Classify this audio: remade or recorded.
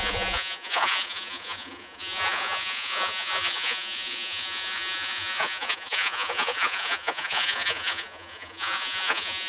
remade